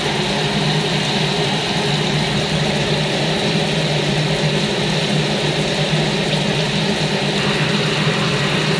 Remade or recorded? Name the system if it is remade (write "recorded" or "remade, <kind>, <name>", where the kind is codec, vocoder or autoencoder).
recorded